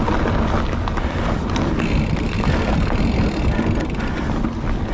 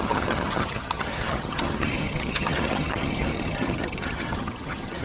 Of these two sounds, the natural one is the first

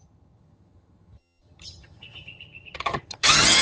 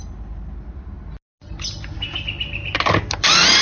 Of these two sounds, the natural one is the second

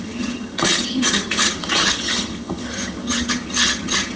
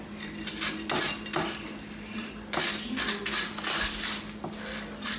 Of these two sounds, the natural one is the second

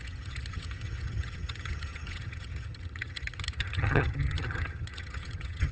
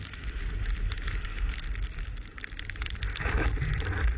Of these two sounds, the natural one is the second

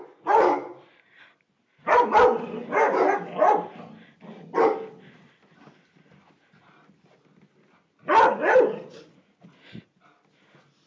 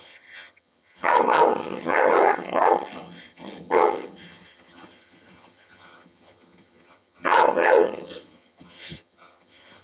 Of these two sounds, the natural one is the first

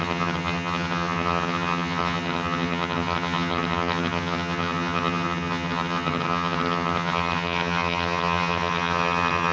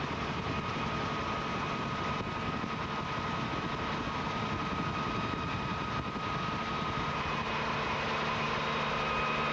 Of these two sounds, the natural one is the second